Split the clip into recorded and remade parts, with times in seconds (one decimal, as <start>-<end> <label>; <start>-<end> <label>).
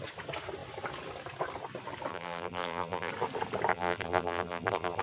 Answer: 0.0-2.1 recorded; 2.1-3.1 remade; 3.1-3.7 recorded; 3.7-5.0 remade